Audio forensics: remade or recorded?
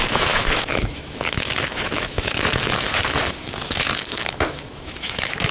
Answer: remade